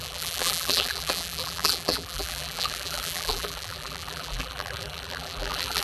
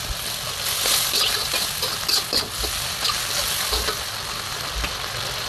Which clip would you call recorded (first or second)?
second